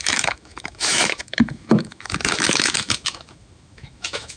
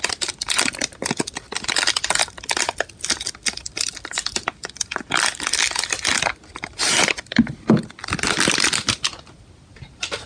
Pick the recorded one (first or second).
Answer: second